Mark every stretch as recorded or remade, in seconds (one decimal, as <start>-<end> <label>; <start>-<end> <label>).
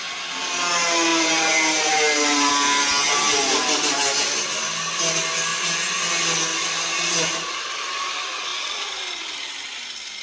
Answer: 0.0-1.1 recorded; 1.1-2.5 remade; 2.5-6.5 recorded; 6.5-8.1 remade; 8.1-8.5 recorded; 8.5-9.1 remade; 9.1-10.2 recorded